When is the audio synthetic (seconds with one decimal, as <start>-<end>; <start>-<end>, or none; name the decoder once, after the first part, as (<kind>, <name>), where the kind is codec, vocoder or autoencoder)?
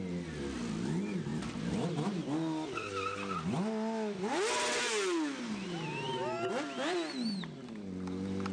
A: none